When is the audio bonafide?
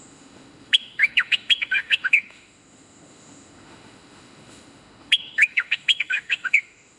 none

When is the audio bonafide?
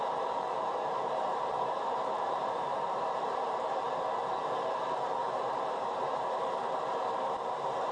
0.0-0.7; 3.6-5.2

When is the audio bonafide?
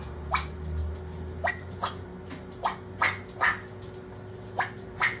0.8-1.5; 2.1-4.8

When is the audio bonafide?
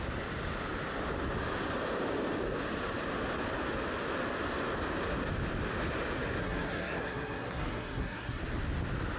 0.0-6.4; 8.4-9.2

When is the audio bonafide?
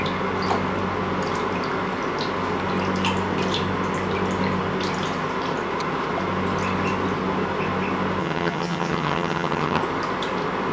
0.0-8.2; 9.8-10.7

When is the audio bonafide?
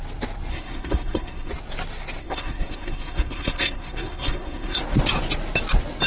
0.0-0.5; 1.5-2.2; 4.8-6.1